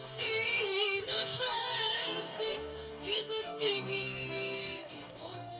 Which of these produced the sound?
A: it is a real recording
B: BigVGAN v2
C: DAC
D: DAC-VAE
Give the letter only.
C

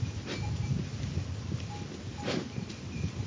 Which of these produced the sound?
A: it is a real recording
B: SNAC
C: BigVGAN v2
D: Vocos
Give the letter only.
A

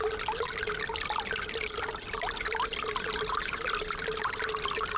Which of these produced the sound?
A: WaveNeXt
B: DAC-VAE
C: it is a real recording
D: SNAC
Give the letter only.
C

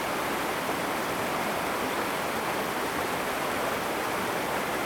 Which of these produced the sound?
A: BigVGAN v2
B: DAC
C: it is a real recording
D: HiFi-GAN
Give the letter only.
A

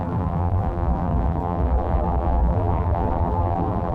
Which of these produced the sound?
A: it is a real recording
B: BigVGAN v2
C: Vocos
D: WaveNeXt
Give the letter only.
B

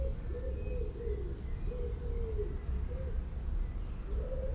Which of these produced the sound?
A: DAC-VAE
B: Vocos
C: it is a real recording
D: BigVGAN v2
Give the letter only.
C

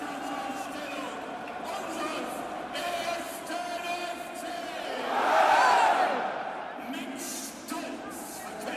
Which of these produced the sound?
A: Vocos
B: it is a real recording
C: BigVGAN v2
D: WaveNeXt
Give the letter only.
C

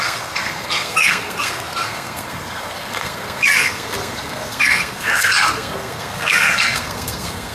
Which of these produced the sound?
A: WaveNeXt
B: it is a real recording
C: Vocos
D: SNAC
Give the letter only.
D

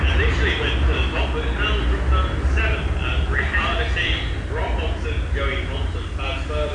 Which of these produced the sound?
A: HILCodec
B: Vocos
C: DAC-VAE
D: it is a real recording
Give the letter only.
D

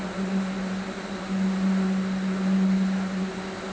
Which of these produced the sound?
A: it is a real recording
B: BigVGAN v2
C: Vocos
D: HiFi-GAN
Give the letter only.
A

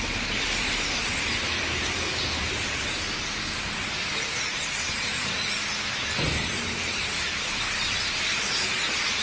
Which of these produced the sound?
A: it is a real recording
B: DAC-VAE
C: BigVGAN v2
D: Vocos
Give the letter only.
A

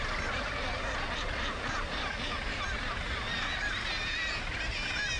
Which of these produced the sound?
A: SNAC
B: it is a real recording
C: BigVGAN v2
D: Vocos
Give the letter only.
C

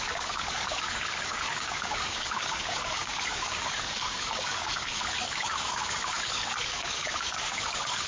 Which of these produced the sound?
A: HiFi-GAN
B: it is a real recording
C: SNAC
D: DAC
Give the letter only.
D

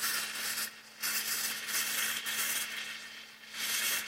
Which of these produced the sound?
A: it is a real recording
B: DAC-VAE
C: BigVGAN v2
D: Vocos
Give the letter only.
A